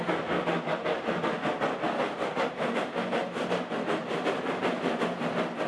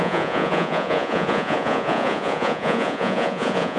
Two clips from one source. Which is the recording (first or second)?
first